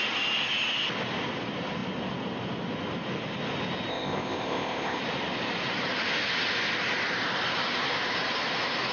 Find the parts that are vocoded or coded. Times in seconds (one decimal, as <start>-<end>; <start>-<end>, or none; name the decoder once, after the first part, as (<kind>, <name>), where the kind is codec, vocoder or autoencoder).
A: 3.9-5.0 (codec, ZipCodec)